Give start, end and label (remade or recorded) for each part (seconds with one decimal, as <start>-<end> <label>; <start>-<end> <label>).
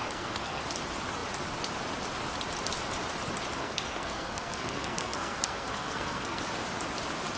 0.0-0.6 remade; 0.6-3.6 recorded; 3.6-6.4 remade; 6.4-7.4 recorded